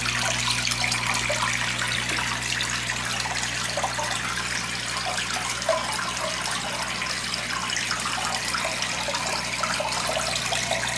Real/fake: real